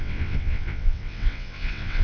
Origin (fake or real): fake